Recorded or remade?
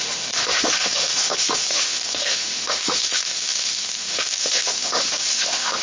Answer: remade